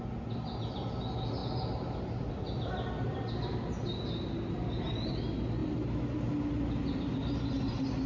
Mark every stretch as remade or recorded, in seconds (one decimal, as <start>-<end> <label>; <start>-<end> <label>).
0.0-8.1 recorded